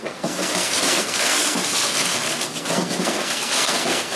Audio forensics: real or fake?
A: fake